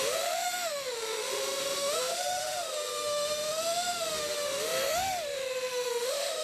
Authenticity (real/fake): fake